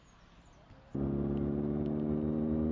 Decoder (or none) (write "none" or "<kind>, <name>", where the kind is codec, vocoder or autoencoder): none